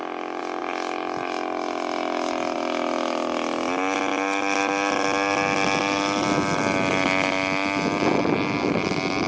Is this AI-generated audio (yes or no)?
no